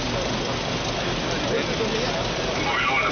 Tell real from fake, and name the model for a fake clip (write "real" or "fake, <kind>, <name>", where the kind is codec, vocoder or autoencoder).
real